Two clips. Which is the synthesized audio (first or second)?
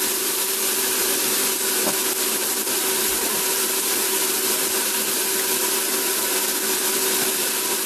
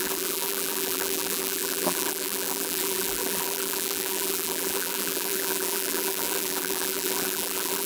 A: second